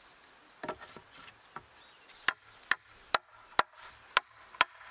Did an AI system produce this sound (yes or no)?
no